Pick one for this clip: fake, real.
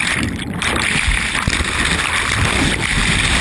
real